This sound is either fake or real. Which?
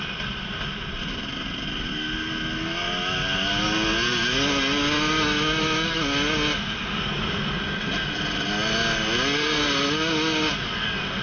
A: real